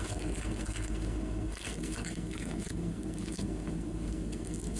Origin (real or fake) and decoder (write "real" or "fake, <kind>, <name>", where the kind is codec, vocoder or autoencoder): fake, codec, SNAC